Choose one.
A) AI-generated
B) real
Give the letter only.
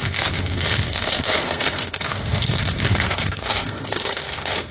A